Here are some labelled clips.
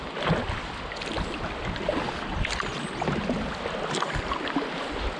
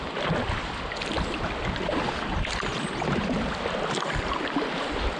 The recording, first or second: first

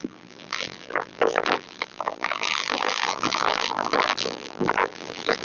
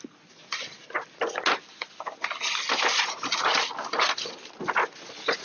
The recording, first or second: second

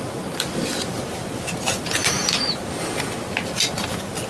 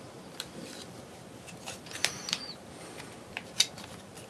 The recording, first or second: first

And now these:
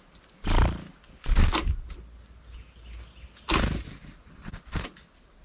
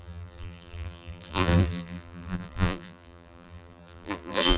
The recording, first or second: first